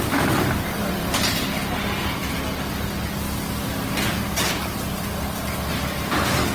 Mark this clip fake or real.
real